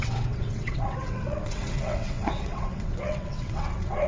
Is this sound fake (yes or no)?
yes